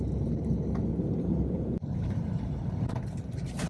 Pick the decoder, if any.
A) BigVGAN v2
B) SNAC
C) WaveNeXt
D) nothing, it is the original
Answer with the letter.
A